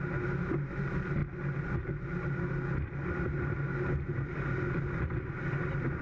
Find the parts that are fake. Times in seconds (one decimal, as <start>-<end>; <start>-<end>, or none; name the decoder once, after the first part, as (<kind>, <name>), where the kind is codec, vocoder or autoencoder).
none